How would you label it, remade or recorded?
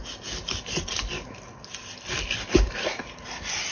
recorded